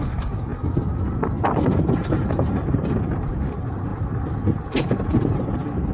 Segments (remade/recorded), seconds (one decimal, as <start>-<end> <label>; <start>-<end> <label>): 0.0-0.5 remade; 0.5-1.7 recorded; 1.7-5.9 remade